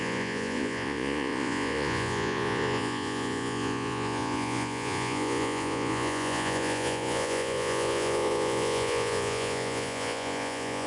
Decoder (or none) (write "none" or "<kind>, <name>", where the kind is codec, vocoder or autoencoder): vocoder, Vocos